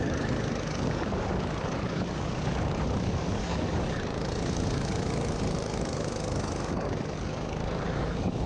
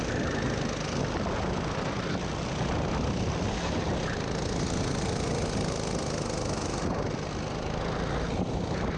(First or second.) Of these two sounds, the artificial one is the first